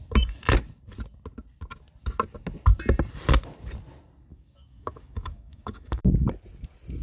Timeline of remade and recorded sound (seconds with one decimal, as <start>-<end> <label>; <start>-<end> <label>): 0.0-4.3 recorded; 4.3-6.0 remade; 6.0-7.0 recorded